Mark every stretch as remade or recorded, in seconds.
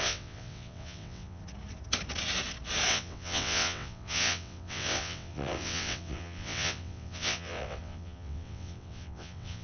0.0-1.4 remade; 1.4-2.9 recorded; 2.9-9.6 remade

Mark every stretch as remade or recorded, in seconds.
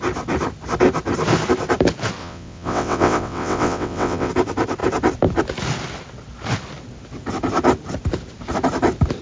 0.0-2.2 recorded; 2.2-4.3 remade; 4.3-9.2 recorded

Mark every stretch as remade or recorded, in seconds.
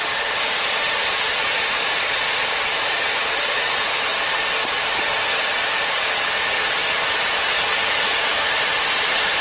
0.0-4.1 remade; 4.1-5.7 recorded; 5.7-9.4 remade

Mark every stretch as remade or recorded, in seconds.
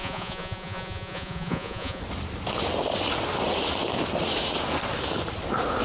0.0-2.0 remade; 2.0-5.8 recorded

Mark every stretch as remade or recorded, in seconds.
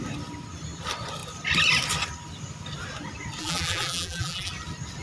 0.0-3.4 recorded; 3.4-4.5 remade; 4.5-5.0 recorded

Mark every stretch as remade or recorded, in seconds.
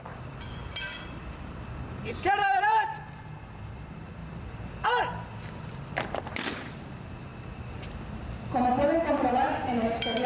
0.0-10.3 remade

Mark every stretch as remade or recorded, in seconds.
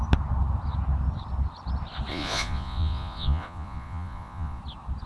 0.0-2.1 recorded; 2.1-4.6 remade; 4.6-5.1 recorded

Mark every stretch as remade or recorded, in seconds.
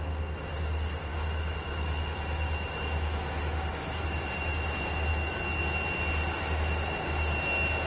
0.0-1.1 recorded; 1.1-4.0 remade; 4.0-5.1 recorded; 5.1-5.6 remade; 5.6-7.9 recorded